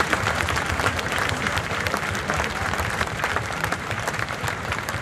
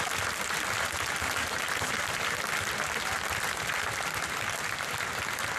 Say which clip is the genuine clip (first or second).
second